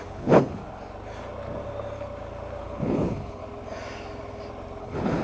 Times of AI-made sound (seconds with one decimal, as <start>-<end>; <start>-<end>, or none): 0.0-0.6; 2.6-3.4; 4.8-5.2